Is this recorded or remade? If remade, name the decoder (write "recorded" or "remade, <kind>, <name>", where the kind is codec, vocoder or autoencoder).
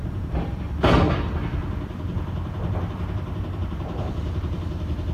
recorded